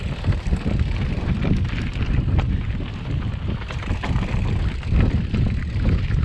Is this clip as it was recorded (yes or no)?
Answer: yes